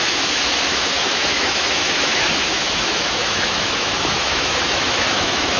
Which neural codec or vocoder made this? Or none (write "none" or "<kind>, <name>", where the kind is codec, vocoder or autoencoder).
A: autoencoder, DAC-VAE